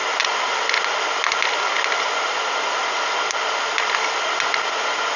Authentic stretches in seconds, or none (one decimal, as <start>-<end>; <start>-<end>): 0.0-5.2